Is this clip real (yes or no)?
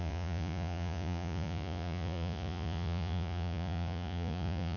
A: no